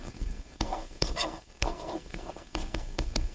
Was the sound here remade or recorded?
remade